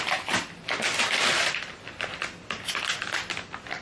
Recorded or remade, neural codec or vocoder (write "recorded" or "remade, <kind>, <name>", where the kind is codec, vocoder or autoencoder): remade, vocoder, BigVGAN v2